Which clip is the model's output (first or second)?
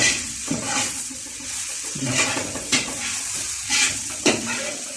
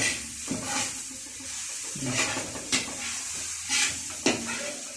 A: first